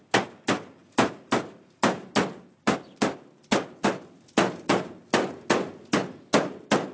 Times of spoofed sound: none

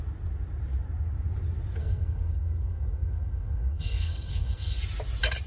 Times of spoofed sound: 1.8-4.8 (codec, SNAC)

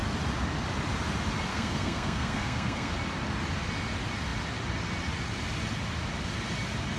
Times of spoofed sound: 1.5-2.9 (codec, SNAC)

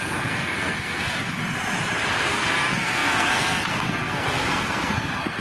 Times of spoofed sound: 0.0-1.4 (codec, SNAC); 2.3-5.4

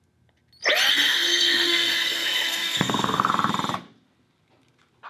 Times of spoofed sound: 0.9-3.3 (codec, SNAC)